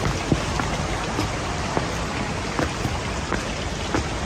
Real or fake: real